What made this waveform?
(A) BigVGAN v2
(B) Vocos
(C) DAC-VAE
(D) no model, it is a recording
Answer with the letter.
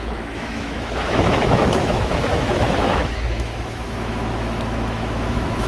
C